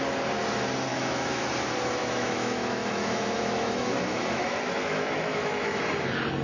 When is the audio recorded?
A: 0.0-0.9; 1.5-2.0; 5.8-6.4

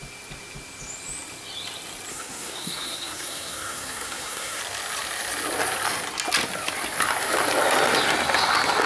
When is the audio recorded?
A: 0.0-2.1; 4.6-8.9

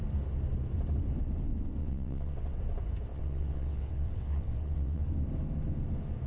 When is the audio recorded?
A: 0.0-1.8; 2.6-3.1; 5.0-6.3

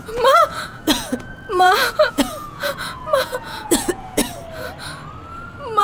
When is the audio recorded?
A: 4.2-5.8

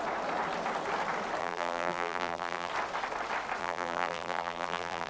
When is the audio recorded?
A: 0.0-1.4; 2.7-3.6

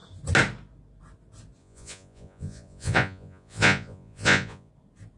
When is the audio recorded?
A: 0.0-1.6; 4.7-5.2